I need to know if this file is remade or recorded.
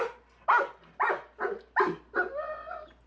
recorded